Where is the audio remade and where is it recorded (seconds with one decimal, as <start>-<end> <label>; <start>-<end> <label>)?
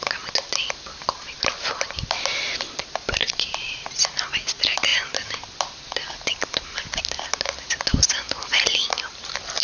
0.0-3.2 recorded; 3.2-3.8 remade; 3.8-9.6 recorded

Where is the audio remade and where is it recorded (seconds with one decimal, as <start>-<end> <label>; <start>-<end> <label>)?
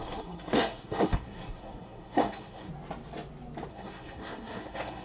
0.0-2.7 remade; 2.7-3.7 recorded; 3.7-5.0 remade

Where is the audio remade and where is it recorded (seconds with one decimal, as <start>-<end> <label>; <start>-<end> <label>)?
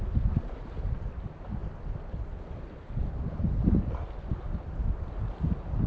0.0-5.9 recorded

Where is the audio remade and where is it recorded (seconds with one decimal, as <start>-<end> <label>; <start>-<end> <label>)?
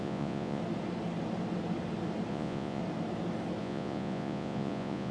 0.0-0.6 remade; 0.6-2.3 recorded; 2.3-2.8 remade; 2.8-3.6 recorded; 3.6-5.1 remade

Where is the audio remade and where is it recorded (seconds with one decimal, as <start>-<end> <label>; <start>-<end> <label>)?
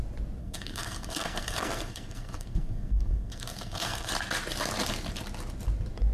0.0-0.4 recorded; 0.4-4.1 remade; 4.1-6.1 recorded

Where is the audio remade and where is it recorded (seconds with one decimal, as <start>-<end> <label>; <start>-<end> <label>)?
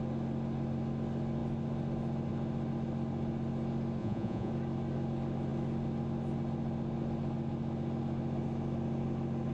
0.0-4.0 recorded; 4.0-4.5 remade; 4.5-9.5 recorded